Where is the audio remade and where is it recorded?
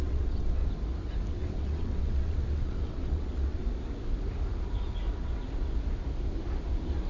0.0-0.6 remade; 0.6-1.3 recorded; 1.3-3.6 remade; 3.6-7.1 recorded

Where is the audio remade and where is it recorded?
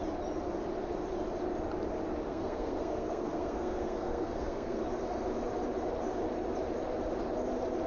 0.0-2.3 recorded; 2.3-4.8 remade; 4.8-7.9 recorded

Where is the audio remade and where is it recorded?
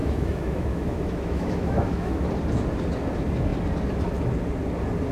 0.0-2.3 remade; 2.3-5.1 recorded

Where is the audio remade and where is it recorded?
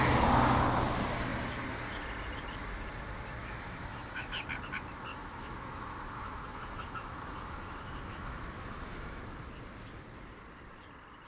0.0-3.4 recorded; 3.4-4.4 remade; 4.4-5.1 recorded; 5.1-9.2 remade; 9.2-11.3 recorded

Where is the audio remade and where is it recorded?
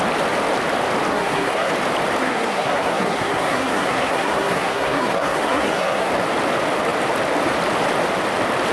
0.0-1.1 recorded; 1.1-1.7 remade; 1.7-2.2 recorded; 2.2-6.1 remade; 6.1-8.7 recorded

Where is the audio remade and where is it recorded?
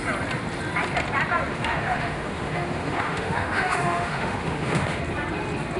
0.0-1.5 recorded; 1.5-5.0 remade; 5.0-5.8 recorded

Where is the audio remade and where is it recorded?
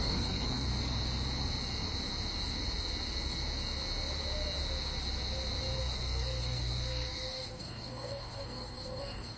0.0-0.7 remade; 0.7-5.8 recorded; 5.8-9.4 remade